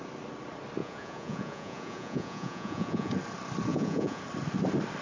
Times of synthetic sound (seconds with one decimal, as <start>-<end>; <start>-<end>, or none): 0.8-3.1; 3.7-4.2